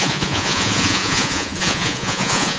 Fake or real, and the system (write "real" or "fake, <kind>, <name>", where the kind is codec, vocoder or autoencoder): fake, vocoder, Vocos